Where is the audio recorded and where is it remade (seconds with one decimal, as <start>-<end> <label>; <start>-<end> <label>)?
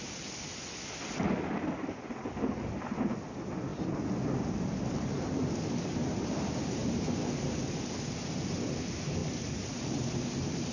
0.0-10.7 recorded